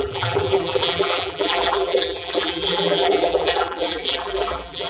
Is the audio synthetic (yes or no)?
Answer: yes